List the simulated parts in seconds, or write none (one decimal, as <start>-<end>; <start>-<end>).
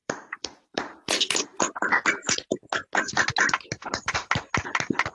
0.0-1.1